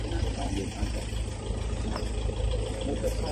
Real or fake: real